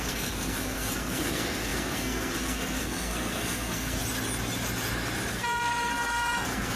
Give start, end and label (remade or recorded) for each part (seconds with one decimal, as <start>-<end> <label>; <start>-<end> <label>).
0.0-4.0 remade; 4.0-5.3 recorded; 5.3-6.8 remade